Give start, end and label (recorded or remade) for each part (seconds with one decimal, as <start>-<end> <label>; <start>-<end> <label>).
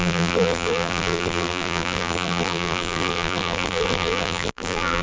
0.0-5.0 remade